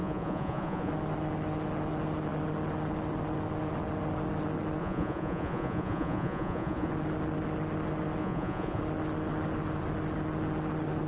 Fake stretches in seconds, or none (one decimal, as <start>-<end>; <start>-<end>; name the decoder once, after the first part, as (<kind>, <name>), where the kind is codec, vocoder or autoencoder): 0.0-0.9 (vocoder, Vocos); 4.8-6.9; 8.2-8.8